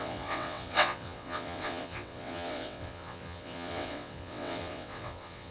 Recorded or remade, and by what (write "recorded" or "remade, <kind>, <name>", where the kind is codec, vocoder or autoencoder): remade, vocoder, WaveNeXt